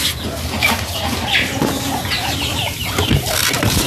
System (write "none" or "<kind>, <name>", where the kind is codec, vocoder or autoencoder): none